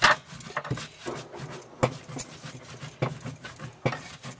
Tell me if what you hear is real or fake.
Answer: real